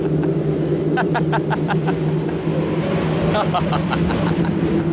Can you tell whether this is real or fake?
real